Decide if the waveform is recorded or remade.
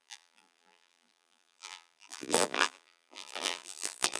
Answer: remade